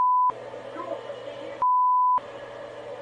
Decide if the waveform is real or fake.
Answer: real